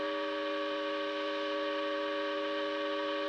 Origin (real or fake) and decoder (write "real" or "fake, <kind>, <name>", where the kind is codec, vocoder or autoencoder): real